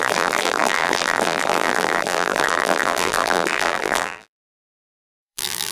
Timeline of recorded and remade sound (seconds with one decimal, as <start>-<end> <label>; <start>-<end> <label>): 0.0-5.7 remade